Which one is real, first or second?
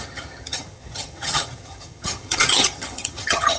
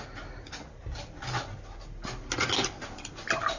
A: second